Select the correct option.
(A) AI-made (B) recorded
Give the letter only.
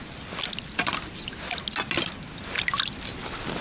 B